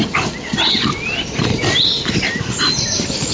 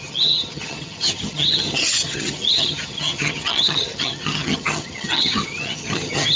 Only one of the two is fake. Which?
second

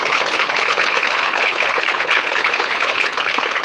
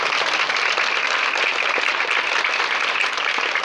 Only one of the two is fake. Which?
first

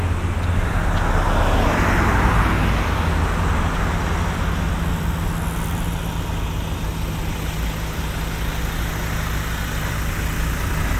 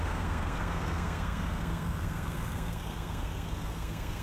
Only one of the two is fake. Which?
second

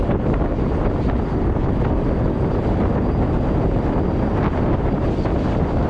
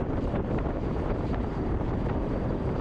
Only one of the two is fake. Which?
second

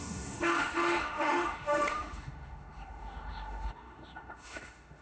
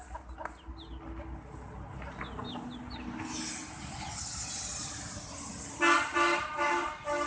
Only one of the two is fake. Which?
first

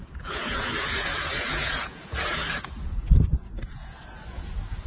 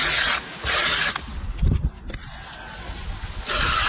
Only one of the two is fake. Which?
first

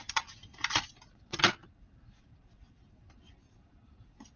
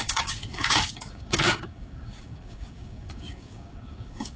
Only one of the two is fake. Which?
second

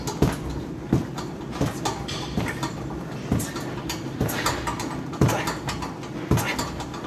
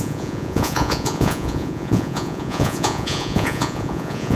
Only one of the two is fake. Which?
second